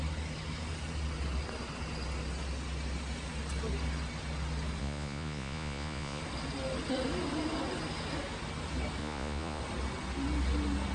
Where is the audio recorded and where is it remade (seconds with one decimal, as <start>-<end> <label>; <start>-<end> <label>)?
0.0-4.8 recorded; 4.8-6.2 remade; 6.2-9.0 recorded; 9.0-9.6 remade; 9.6-10.9 recorded